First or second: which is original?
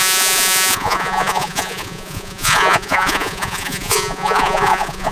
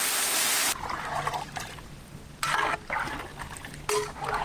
second